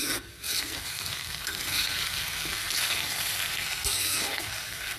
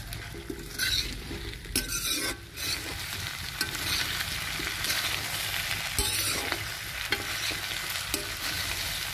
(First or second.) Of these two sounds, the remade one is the first